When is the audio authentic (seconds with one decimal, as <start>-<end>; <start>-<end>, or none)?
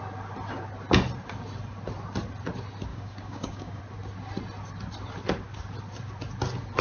0.0-2.9; 3.8-6.8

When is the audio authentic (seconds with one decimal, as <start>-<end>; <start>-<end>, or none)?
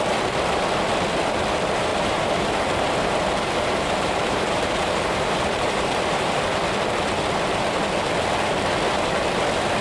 0.0-1.9; 6.4-9.8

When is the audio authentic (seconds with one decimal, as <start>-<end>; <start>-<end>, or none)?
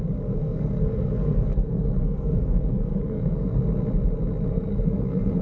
0.0-0.4; 3.6-4.5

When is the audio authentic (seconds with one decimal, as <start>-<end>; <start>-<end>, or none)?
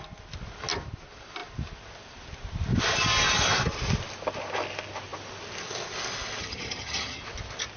0.0-6.4; 7.2-7.8